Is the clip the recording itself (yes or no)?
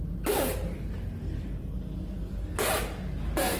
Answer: yes